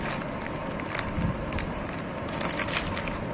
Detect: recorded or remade recorded